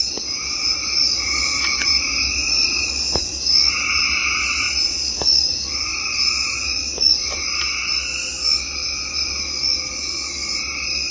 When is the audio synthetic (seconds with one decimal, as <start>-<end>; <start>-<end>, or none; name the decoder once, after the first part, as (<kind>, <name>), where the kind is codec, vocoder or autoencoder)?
none